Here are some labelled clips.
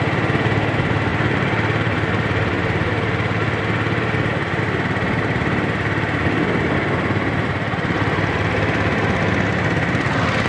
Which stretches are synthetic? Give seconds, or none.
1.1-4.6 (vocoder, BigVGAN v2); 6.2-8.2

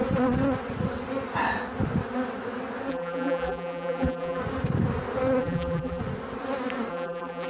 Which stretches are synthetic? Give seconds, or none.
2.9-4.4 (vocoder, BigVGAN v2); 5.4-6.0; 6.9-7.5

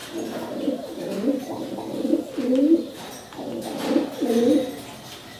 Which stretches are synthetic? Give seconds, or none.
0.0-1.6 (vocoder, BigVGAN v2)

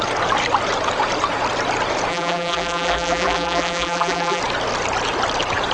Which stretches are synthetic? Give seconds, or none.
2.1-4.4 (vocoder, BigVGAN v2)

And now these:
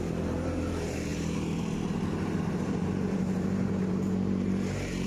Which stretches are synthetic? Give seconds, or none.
0.0-5.1 (vocoder, BigVGAN v2)

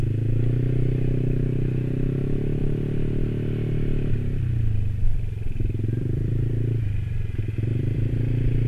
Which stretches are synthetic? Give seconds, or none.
5.1-6.5 (vocoder, BigVGAN v2); 7.7-8.7